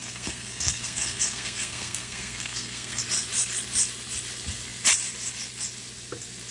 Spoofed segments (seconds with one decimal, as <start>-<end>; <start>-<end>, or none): 0.0-3.0